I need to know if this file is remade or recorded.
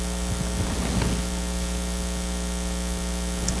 recorded